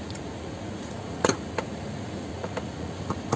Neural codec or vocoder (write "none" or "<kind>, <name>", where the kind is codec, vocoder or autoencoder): vocoder, Vocos